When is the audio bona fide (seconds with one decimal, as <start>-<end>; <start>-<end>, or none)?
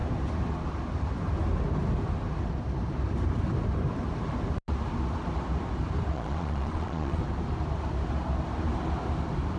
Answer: 0.0-6.1; 7.2-9.6